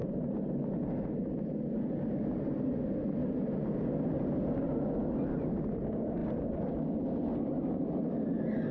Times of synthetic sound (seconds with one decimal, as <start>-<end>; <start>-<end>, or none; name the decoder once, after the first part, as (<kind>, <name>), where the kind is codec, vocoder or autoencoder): 0.0-0.7 (vocoder, BigVGAN v2)